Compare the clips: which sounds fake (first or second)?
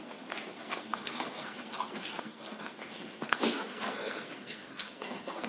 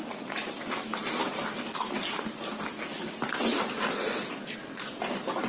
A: first